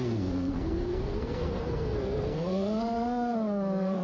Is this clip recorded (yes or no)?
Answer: no